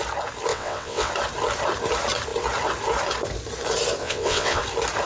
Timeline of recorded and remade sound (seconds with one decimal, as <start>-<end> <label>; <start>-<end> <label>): 0.0-0.5 recorded; 0.5-1.1 remade; 1.1-4.0 recorded; 4.0-4.6 remade; 4.6-5.1 recorded